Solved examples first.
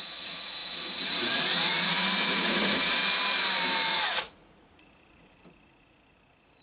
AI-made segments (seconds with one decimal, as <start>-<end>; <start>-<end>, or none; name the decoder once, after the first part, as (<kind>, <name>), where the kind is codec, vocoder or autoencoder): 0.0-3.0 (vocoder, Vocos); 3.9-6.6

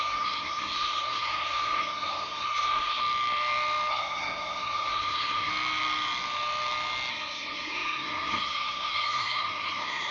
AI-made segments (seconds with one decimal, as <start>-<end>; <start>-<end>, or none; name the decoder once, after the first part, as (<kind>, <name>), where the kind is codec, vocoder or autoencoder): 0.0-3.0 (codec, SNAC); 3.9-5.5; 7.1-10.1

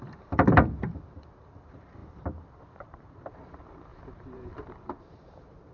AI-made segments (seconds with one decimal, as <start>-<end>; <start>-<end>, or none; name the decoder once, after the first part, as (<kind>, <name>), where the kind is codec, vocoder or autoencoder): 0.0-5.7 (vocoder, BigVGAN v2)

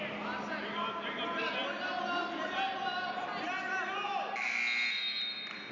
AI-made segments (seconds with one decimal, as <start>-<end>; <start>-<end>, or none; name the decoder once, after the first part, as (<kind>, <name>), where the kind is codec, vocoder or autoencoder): none

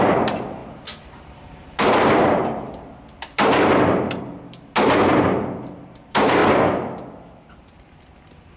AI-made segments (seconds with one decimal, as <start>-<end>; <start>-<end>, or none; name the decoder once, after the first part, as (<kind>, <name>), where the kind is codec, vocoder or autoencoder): 0.0-0.6 (vocoder, BigVGAN v2); 1.1-2.9; 5.6-6.4; 7.5-8.6

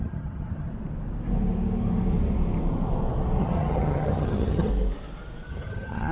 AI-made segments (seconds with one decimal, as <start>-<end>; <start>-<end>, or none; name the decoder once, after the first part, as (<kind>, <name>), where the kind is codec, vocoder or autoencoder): 0.0-0.7 (vocoder, HiFi-GAN); 3.4-4.7; 5.5-6.1

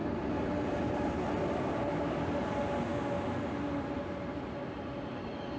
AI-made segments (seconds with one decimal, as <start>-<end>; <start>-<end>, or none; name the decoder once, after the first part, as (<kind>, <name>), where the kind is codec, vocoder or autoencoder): none

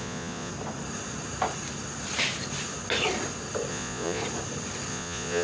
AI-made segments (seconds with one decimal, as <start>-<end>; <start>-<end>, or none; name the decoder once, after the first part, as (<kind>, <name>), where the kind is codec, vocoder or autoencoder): 0.0-0.5 (vocoder, Vocos); 3.7-4.2; 4.9-5.4